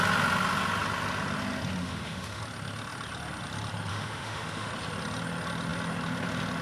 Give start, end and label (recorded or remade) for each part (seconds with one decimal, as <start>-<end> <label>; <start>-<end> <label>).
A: 0.0-1.8 recorded; 1.8-2.4 remade; 2.4-3.9 recorded; 3.9-4.7 remade; 4.7-6.6 recorded